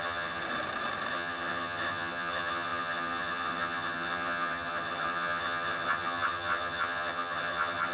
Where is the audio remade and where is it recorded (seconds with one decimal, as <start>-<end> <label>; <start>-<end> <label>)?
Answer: 0.0-0.4 remade; 0.4-1.1 recorded; 1.1-7.9 remade